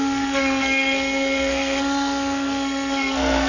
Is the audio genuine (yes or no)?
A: no